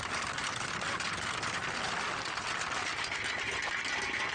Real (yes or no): yes